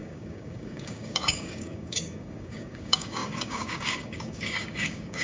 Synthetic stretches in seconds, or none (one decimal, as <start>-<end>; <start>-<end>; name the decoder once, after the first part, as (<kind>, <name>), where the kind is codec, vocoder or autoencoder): 0.0-5.2 (codec, DAC)